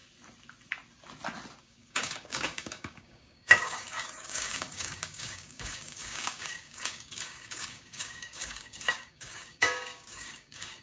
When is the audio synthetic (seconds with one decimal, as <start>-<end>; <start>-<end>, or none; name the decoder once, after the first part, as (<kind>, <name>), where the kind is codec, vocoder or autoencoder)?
1.6-10.8 (codec, DAC)